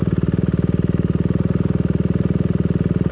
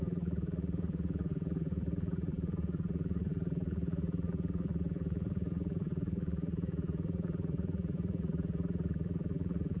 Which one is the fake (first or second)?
second